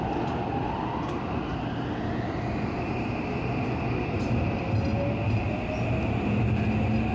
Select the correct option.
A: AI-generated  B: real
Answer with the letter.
B